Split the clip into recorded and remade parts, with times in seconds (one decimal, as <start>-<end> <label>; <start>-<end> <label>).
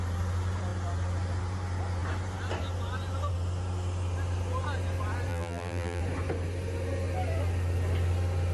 0.0-5.3 recorded; 5.3-6.0 remade; 6.0-8.5 recorded